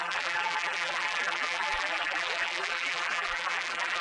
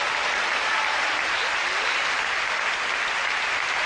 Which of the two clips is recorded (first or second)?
second